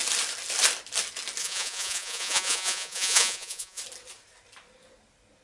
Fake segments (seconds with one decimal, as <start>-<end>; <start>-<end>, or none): 1.4-3.8